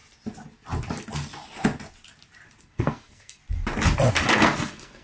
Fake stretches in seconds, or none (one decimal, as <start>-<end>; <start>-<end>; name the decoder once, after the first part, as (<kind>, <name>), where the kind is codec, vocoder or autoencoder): 2.6-3.4 (codec, SNAC); 4.1-5.0